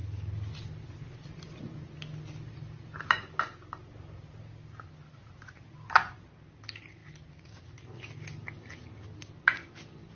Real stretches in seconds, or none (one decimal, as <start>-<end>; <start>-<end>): 0.0-10.2